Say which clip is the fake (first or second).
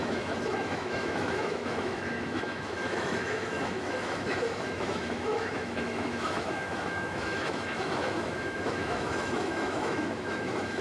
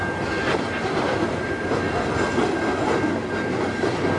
first